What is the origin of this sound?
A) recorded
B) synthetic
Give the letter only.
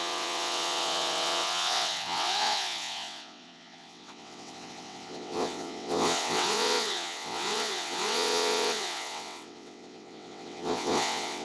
B